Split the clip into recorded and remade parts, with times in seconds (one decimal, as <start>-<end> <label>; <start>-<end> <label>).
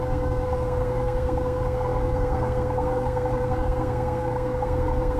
0.0-5.2 remade